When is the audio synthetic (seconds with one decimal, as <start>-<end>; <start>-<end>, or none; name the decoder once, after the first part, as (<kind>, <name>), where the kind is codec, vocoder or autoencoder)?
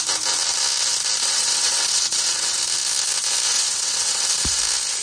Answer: 1.2-2.6 (vocoder, WaveNeXt); 3.5-4.6